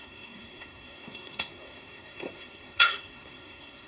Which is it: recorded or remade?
remade